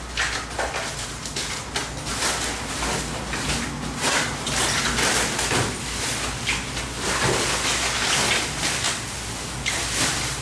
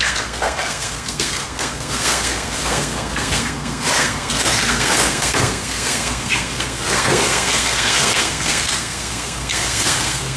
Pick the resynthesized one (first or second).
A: second